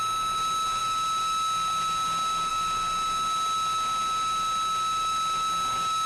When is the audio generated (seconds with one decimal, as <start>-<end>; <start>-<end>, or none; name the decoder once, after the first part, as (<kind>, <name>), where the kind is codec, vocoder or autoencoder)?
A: none